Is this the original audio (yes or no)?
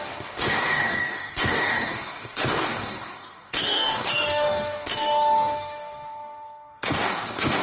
no